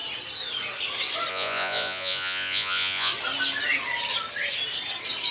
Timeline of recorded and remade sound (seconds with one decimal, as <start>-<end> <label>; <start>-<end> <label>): 0.0-1.3 recorded; 1.3-3.1 remade; 3.1-5.3 recorded